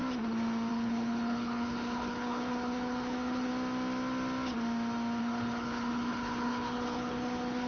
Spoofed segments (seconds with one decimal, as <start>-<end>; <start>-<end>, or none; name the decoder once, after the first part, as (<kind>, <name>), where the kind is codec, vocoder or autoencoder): 0.7-3.5 (codec, HILCodec); 5.2-7.7